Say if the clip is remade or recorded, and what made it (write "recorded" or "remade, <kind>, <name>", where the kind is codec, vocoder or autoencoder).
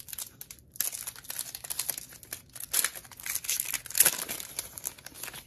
recorded